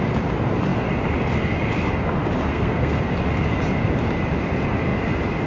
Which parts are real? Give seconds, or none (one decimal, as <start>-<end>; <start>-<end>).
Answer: 0.0-2.5; 3.1-5.5